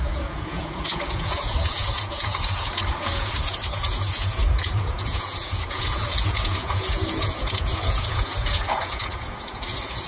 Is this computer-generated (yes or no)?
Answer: yes